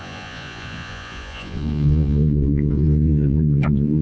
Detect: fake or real fake